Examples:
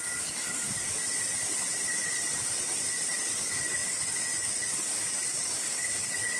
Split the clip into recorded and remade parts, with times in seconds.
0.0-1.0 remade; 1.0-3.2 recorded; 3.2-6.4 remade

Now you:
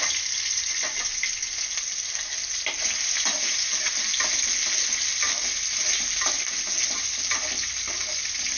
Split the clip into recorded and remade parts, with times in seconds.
0.0-8.6 recorded

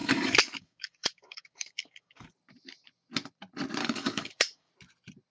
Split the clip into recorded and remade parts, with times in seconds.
0.0-2.3 remade; 2.3-3.8 recorded; 3.8-4.7 remade; 4.7-5.3 recorded

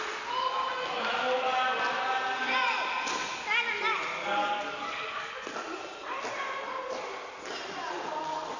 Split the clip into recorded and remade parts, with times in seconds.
0.0-4.4 recorded; 4.4-5.3 remade; 5.3-8.6 recorded

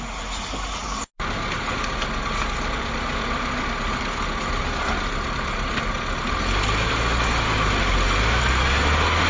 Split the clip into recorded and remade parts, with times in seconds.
0.0-9.3 recorded

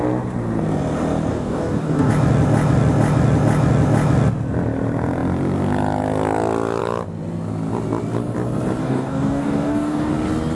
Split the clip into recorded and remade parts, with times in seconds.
0.0-1.3 recorded; 1.3-2.1 remade; 2.1-8.8 recorded; 8.8-10.1 remade; 10.1-10.5 recorded

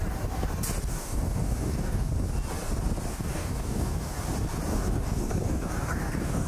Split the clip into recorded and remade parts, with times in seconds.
0.0-0.9 recorded; 0.9-2.1 remade; 2.1-3.1 recorded; 3.1-4.2 remade; 4.2-4.7 recorded; 4.7-6.5 remade